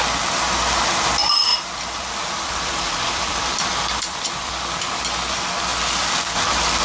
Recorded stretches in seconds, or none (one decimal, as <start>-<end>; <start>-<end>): 0.0-1.5; 4.6-6.8